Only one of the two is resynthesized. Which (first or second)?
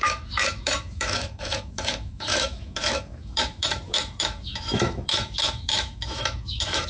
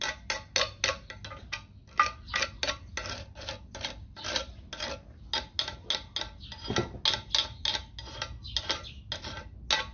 first